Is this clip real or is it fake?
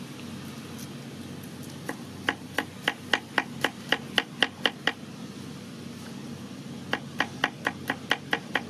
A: real